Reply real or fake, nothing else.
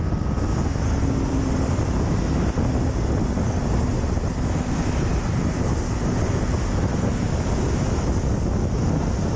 real